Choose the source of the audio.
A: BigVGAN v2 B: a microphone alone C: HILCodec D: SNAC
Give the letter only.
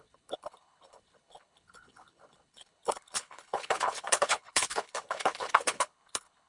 C